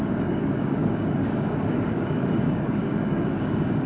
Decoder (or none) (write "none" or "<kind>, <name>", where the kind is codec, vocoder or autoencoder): codec, DAC